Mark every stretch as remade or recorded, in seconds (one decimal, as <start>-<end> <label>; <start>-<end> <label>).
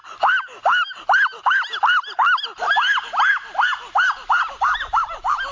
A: 0.0-5.5 recorded